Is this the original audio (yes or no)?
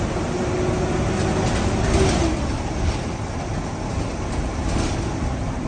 yes